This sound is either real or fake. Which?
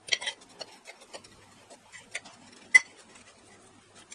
real